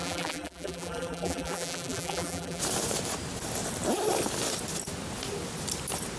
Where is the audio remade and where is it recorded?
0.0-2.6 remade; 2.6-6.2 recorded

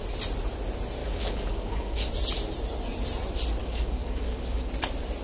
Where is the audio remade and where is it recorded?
0.0-1.0 recorded; 1.0-2.1 remade; 2.1-3.6 recorded; 3.6-4.7 remade; 4.7-5.2 recorded

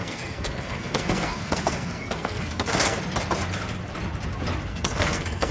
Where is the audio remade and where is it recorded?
0.0-3.0 remade; 3.0-4.7 recorded; 4.7-5.5 remade

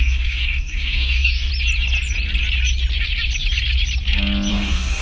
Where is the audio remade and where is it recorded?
0.0-1.5 remade; 1.5-4.5 recorded; 4.5-5.0 remade

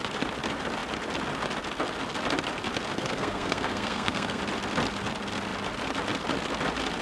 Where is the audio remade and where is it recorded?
0.0-2.9 recorded; 2.9-4.4 remade; 4.4-7.0 recorded

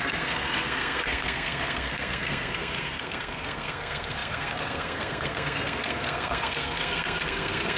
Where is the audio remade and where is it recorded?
0.0-7.8 remade

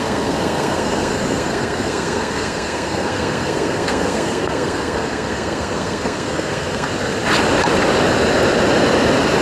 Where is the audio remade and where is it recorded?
0.0-6.9 remade; 6.9-9.4 recorded

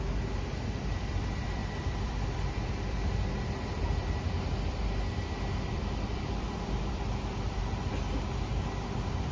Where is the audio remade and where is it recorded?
0.0-7.6 remade; 7.6-8.4 recorded; 8.4-9.3 remade